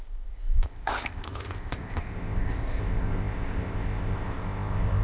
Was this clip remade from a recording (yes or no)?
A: yes